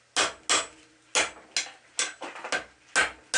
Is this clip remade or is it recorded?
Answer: recorded